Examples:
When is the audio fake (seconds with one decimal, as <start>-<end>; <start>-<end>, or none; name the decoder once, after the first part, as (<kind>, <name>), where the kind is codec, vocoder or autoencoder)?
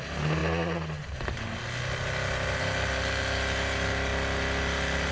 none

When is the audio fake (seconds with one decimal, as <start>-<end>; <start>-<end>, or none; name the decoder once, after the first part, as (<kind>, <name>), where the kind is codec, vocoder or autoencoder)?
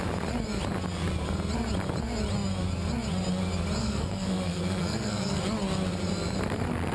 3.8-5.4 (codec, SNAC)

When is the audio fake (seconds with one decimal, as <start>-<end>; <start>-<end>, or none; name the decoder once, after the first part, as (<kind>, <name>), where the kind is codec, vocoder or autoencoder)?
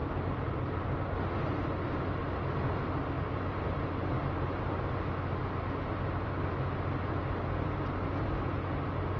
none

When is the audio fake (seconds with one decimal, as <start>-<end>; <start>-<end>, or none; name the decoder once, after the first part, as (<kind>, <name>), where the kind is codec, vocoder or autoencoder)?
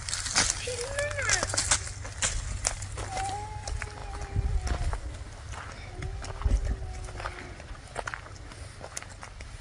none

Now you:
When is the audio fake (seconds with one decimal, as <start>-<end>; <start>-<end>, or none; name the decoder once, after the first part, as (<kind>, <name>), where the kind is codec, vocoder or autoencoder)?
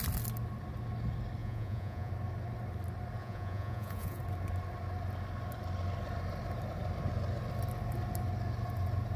1.4-2.1 (vocoder, Vocos); 3.2-4.2